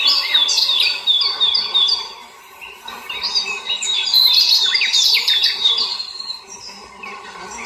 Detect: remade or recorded remade